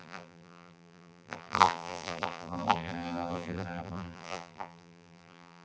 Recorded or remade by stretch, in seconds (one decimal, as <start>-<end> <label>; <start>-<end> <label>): 0.0-5.6 remade